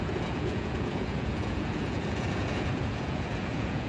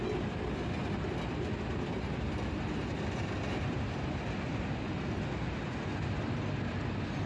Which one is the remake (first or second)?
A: first